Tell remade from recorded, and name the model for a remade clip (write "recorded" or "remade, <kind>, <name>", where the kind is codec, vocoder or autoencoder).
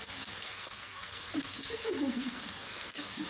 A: remade, codec, SNAC